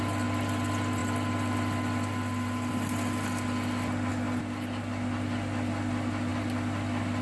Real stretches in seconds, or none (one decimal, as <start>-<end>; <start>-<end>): 0.0-7.2